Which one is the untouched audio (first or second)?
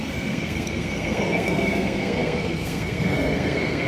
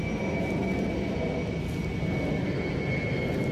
second